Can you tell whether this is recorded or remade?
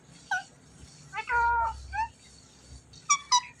recorded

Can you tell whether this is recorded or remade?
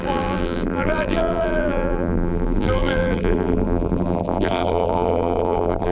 remade